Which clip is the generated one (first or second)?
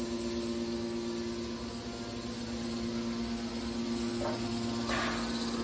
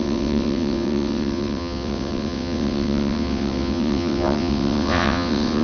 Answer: second